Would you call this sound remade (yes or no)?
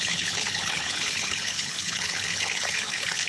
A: yes